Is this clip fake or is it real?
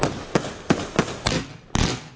real